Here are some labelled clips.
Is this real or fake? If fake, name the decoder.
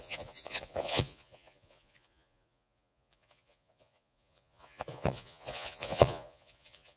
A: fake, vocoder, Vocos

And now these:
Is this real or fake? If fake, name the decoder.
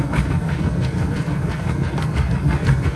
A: fake, codec, SNAC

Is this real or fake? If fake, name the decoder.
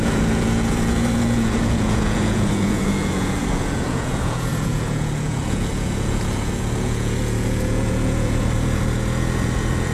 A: fake, vocoder, Vocos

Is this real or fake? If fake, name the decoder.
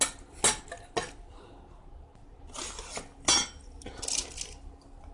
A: real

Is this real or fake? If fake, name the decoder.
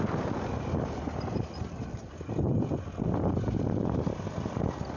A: real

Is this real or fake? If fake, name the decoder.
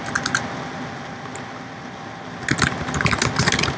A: real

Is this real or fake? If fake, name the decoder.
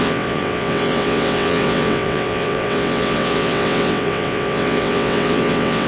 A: fake, vocoder, WaveNeXt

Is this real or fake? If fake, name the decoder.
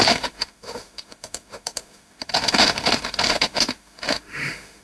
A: fake, autoencoder, DAC-VAE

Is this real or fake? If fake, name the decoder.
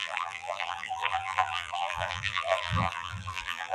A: fake, vocoder, BigVGAN v2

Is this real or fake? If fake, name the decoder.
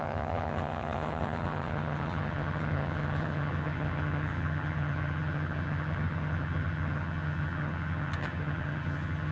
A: fake, vocoder, HiFi-GAN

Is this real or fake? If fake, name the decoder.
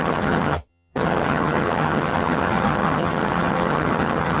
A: fake, vocoder, HiFi-GAN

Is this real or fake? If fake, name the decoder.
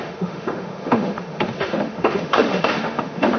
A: fake, autoencoder, DAC-VAE